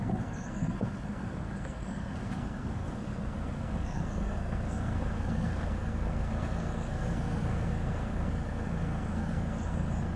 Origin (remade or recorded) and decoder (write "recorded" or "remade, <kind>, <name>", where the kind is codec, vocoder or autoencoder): remade, codec, SNAC